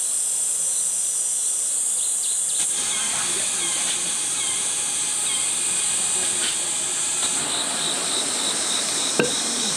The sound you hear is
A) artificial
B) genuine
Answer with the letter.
B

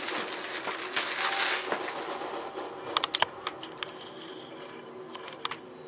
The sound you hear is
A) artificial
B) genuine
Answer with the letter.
B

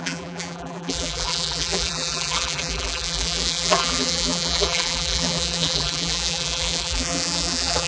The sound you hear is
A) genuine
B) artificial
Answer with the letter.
B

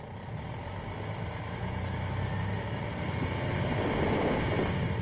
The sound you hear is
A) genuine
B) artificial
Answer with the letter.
A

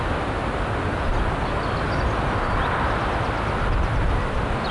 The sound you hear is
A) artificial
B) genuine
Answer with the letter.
B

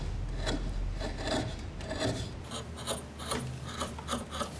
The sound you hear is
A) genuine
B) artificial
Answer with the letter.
A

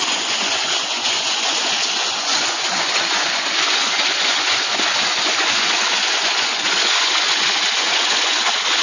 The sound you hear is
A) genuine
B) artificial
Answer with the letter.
B